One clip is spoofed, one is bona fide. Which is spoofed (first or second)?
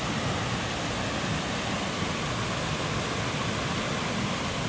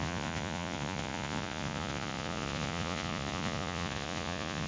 second